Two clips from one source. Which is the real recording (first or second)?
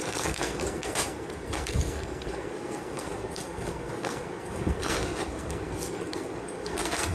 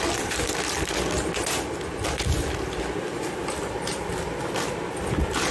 second